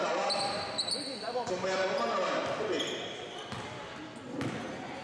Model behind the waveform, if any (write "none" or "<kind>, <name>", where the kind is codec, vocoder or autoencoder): none